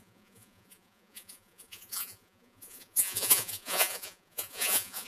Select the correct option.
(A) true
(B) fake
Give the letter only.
B